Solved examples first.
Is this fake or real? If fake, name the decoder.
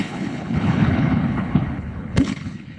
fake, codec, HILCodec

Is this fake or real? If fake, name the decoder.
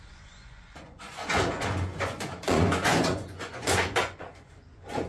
fake, vocoder, Vocos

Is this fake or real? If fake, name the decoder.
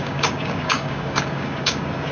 fake, codec, DAC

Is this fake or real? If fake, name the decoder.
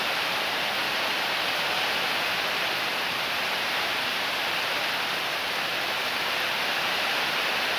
real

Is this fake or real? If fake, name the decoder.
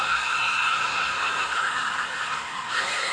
fake, codec, SNAC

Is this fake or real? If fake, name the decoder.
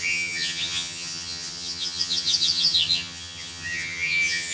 fake, vocoder, HiFi-GAN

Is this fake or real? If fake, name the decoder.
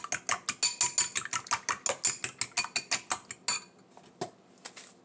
real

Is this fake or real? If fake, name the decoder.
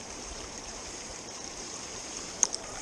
fake, vocoder, BigVGAN v2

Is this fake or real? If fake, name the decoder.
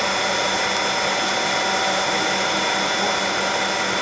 real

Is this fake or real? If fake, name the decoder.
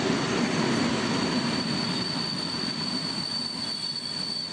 real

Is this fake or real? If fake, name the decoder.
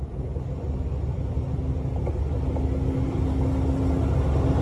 real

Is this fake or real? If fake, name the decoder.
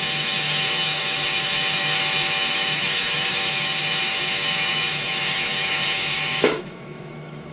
fake, autoencoder, DAC-VAE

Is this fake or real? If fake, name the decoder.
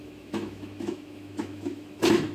fake, autoencoder, DAC-VAE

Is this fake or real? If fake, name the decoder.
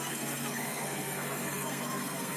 fake, codec, SNAC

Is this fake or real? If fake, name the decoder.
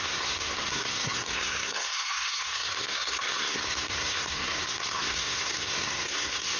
fake, codec, SNAC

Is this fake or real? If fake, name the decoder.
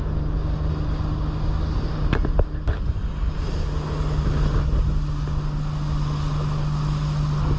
real